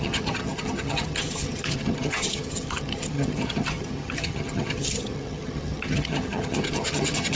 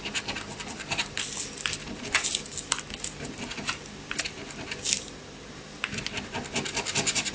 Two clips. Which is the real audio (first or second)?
second